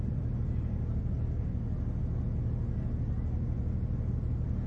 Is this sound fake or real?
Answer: real